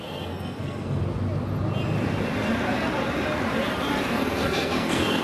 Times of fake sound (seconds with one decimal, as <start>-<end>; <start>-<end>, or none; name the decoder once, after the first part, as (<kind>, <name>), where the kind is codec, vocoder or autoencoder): 0.0-1.0 (codec, SNAC); 4.1-5.2